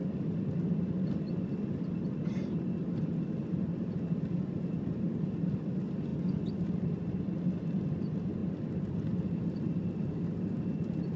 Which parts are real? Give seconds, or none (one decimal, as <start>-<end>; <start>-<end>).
0.0-11.2